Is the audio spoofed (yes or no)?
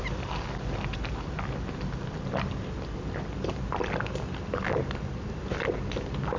no